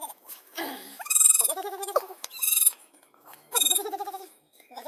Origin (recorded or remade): remade